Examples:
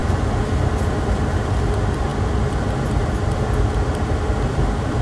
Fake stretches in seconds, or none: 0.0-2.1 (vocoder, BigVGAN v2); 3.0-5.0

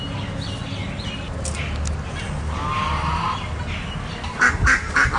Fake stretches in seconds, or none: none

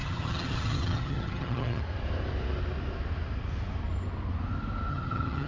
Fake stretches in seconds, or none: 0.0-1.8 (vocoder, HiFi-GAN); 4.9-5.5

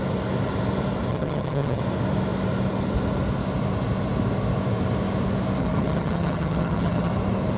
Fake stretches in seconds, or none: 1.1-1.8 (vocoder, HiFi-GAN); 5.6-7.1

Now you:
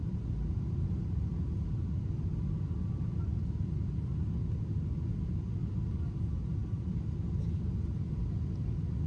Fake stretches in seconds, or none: none

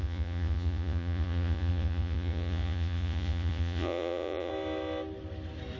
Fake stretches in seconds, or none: 0.0-4.5 (vocoder, Vocos)

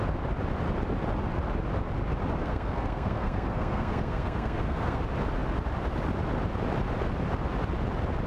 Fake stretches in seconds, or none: 2.4-5.0 (codec, SNAC)